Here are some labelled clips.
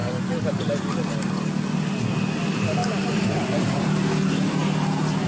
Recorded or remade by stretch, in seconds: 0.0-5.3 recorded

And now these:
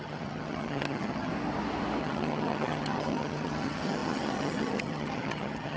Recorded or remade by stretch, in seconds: 0.0-1.3 remade; 1.3-2.0 recorded; 2.0-5.8 remade

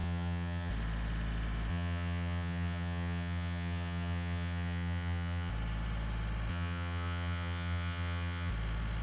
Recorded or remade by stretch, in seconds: 0.0-0.7 remade; 0.7-1.7 recorded; 1.7-5.5 remade; 5.5-6.5 recorded; 6.5-8.5 remade; 8.5-9.0 recorded